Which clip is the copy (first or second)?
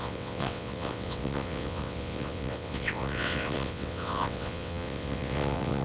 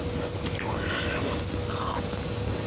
first